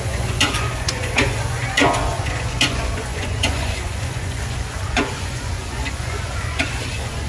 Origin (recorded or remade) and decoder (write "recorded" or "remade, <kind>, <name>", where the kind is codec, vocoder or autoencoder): remade, vocoder, Vocos